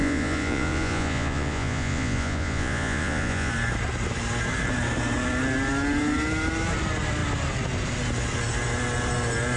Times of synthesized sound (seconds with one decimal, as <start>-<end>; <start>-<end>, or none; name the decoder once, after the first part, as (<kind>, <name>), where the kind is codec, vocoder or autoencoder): 0.0-3.5 (vocoder, Vocos)